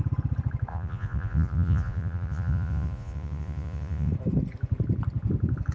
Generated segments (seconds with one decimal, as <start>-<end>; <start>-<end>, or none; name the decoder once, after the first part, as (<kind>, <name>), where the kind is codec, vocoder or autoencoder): 0.7-4.1 (vocoder, Vocos)